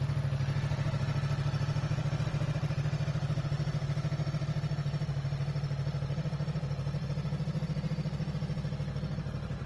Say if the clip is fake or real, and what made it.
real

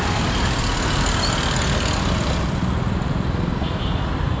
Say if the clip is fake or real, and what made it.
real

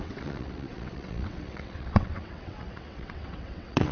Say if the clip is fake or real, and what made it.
fake, vocoder, WaveNeXt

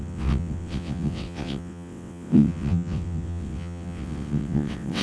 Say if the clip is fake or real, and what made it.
fake, vocoder, WaveNeXt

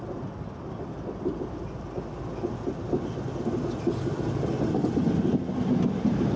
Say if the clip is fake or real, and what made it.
real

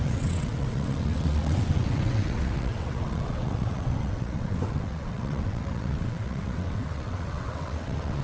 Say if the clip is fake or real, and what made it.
fake, vocoder, WaveNeXt